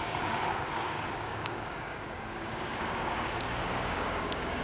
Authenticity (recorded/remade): remade